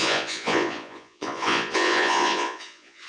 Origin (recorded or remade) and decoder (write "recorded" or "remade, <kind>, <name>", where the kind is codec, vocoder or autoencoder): remade, vocoder, Vocos